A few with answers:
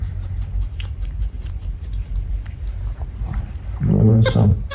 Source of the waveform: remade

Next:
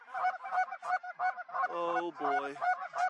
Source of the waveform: recorded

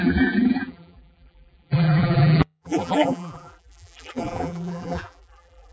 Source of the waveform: remade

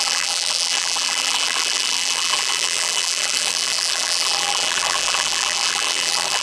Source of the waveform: remade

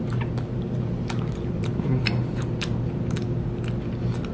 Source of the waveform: remade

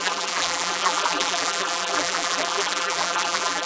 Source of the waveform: remade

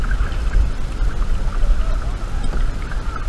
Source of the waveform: recorded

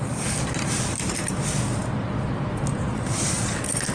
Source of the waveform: recorded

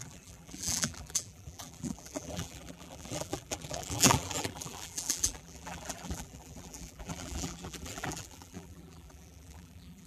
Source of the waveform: remade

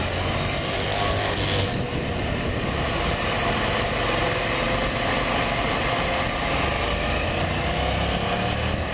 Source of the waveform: recorded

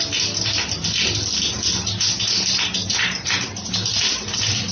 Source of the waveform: recorded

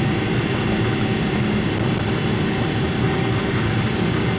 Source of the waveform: remade